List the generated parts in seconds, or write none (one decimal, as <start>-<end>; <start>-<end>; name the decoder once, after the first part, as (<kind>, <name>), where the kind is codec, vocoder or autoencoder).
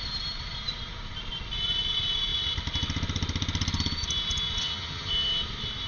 4.6-5.1 (vocoder, HiFi-GAN)